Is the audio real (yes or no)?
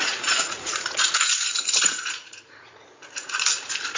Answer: no